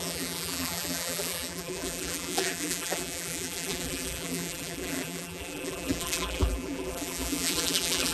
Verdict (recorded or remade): remade